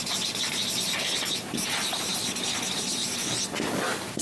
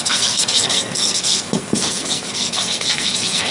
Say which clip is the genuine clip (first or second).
first